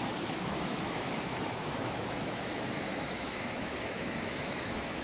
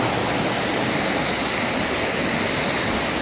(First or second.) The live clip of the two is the second